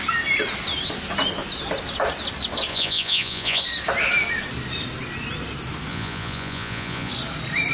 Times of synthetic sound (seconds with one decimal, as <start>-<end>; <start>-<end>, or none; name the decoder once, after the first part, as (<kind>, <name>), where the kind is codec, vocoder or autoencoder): 2.7-3.6 (vocoder, Vocos); 5.9-7.1

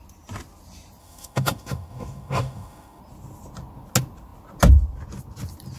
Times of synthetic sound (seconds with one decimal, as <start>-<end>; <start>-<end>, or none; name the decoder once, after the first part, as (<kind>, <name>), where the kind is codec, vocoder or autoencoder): 1.0-3.0 (autoencoder, DAC-VAE)